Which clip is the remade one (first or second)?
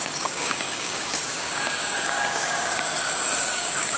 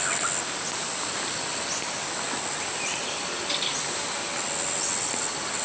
first